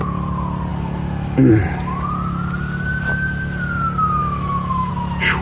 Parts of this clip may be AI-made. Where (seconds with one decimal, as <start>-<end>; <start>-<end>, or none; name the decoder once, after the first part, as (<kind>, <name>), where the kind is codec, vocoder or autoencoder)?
0.7-1.5 (autoencoder, DAC-VAE); 4.2-4.9